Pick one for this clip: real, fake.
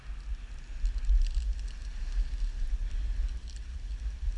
real